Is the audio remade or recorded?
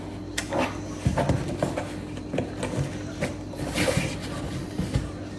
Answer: recorded